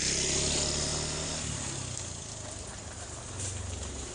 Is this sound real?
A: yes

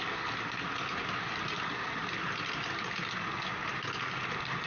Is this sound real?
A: yes